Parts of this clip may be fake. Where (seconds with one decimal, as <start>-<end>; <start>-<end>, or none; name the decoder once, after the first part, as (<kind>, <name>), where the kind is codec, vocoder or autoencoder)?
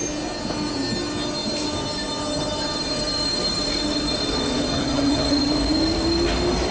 4.7-5.5 (vocoder, HiFi-GAN)